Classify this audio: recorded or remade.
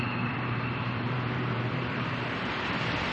remade